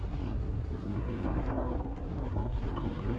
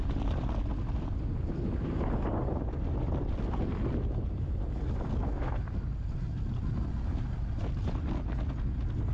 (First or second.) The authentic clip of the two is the second